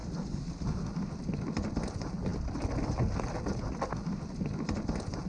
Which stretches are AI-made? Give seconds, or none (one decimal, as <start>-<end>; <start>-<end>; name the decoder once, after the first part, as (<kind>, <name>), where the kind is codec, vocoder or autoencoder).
none